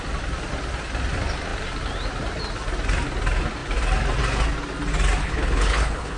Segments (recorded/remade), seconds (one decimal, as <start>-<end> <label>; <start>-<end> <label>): 0.0-5.2 recorded; 5.2-6.2 remade